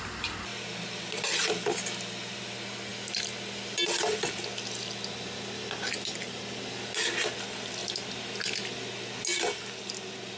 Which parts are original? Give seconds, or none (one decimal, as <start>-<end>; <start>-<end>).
0.0-10.4